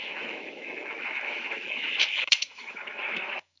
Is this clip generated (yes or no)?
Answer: yes